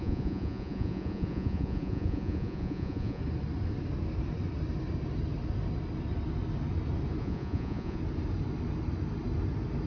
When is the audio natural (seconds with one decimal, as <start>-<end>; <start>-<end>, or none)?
3.2-7.2; 8.0-9.9